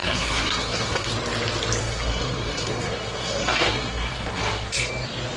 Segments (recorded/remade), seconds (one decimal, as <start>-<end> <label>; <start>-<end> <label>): 0.0-1.1 remade; 1.1-1.8 recorded; 1.8-4.9 remade; 4.9-5.4 recorded